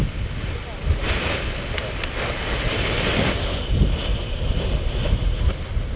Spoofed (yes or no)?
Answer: no